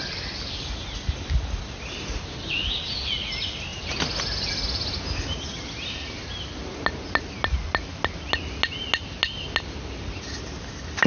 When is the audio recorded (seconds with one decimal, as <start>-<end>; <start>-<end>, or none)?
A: 0.0-11.1